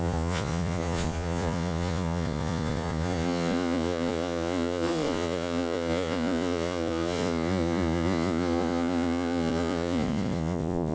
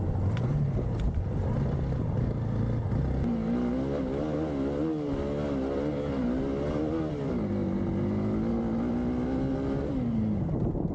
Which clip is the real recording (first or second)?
second